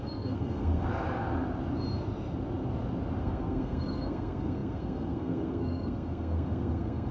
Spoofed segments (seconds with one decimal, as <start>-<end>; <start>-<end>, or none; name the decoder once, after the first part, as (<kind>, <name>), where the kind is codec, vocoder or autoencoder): 0.0-0.9 (codec, SNAC); 3.2-7.1